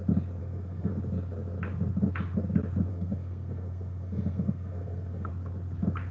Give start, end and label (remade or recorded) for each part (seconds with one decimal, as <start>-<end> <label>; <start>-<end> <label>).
0.0-0.4 recorded; 0.4-0.9 remade; 0.9-2.9 recorded; 2.9-5.3 remade; 5.3-6.1 recorded